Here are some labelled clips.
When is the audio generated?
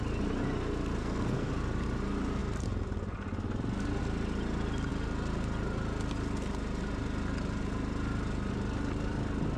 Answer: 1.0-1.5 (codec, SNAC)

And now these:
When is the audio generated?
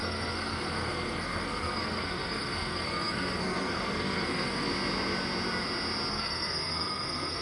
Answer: 0.0-4.7 (codec, SNAC); 6.1-7.4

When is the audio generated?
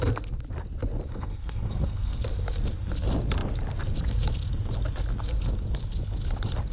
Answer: 1.1-2.2 (codec, SNAC)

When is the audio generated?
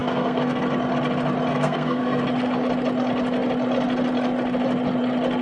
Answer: 0.0-0.6 (codec, SNAC); 1.5-2.2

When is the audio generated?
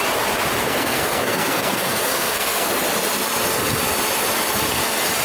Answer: 0.6-2.7 (codec, SNAC)